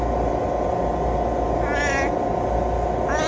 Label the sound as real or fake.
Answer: real